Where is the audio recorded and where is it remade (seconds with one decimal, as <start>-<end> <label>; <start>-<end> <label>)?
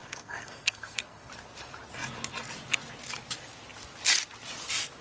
0.0-1.3 remade; 1.3-5.0 recorded